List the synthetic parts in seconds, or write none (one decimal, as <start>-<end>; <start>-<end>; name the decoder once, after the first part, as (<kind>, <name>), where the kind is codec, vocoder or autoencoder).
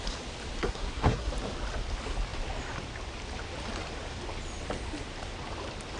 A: 0.6-1.3 (codec, SNAC)